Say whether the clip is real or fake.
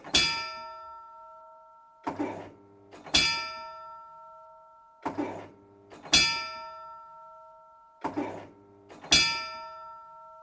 real